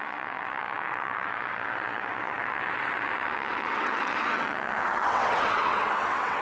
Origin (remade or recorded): remade